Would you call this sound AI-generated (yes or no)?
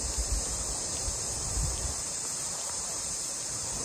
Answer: yes